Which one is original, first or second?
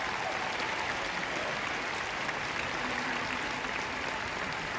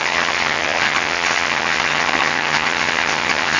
first